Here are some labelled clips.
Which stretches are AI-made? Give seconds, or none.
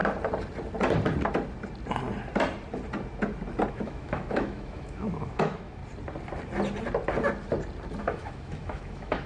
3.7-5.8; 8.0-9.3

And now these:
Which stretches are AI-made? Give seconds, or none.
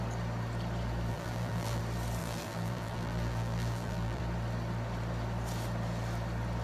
1.1-1.8; 2.2-4.2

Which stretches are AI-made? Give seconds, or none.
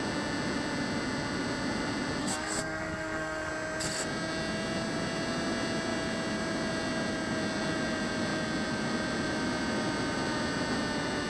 2.2-3.5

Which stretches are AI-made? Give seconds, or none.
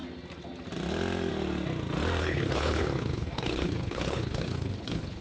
2.2-5.2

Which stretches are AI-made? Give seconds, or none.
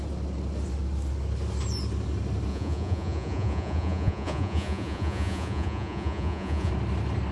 2.5-6.7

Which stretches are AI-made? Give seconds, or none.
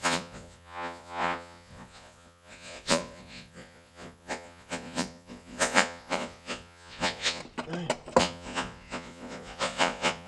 0.0-7.4; 8.2-10.3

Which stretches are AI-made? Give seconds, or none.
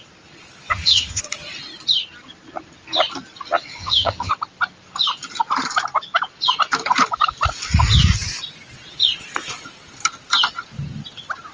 0.7-1.2; 3.8-4.3